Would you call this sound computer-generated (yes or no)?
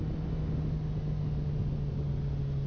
no